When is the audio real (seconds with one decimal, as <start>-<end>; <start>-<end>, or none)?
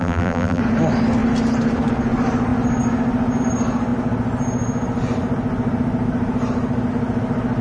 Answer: 0.6-7.6